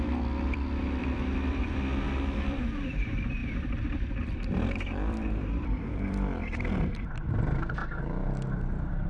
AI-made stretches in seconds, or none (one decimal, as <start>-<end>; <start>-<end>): 0.0-7.8; 8.5-9.1